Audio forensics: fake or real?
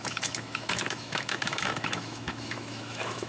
fake